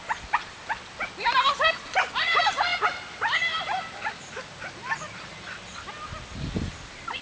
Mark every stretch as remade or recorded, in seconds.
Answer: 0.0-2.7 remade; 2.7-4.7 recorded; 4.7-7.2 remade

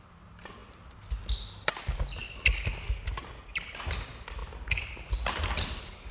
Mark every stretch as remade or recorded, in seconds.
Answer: 0.0-0.6 remade; 0.6-3.8 recorded; 3.8-4.4 remade; 4.4-6.1 recorded

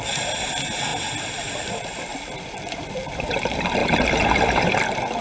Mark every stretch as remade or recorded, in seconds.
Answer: 0.0-0.9 recorded; 0.9-1.5 remade; 1.5-2.1 recorded; 2.1-3.2 remade; 3.2-5.2 recorded

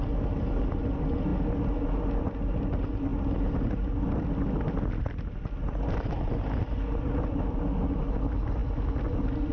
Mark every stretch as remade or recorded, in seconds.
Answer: 0.0-9.5 recorded

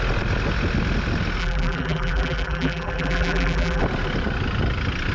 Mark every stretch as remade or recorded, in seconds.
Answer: 0.0-1.4 recorded; 1.4-3.8 remade; 3.8-5.1 recorded

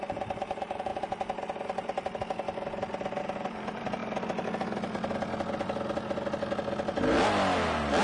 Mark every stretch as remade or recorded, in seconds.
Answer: 0.0-0.9 remade; 0.9-3.2 recorded; 3.2-4.0 remade; 4.0-8.0 recorded

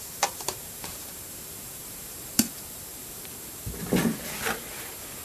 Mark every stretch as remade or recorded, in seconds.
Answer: 0.0-2.9 remade; 2.9-5.2 recorded

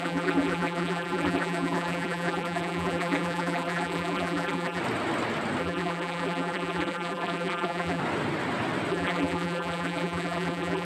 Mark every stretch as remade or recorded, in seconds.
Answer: 0.0-4.8 remade; 4.8-5.6 recorded; 5.6-8.0 remade; 8.0-8.9 recorded; 8.9-10.8 remade